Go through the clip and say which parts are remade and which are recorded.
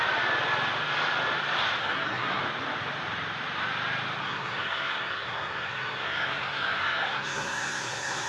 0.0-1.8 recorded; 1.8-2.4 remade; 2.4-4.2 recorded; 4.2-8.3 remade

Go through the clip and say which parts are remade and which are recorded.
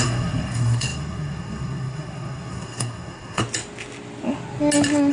0.0-3.4 remade; 3.4-5.1 recorded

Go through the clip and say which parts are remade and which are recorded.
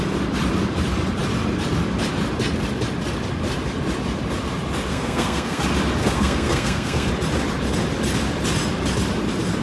0.0-4.9 recorded; 4.9-5.6 remade; 5.6-6.0 recorded; 6.0-7.1 remade; 7.1-9.6 recorded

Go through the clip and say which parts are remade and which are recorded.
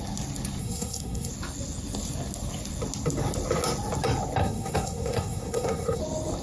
0.0-0.6 recorded; 0.6-1.3 remade; 1.3-4.4 recorded; 4.4-6.0 remade; 6.0-6.4 recorded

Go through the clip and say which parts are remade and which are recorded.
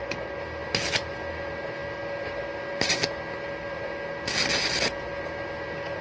0.0-6.0 recorded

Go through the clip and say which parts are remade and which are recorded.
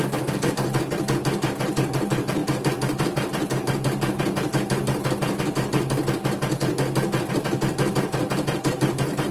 0.0-9.3 recorded